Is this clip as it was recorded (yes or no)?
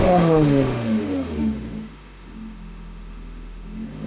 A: no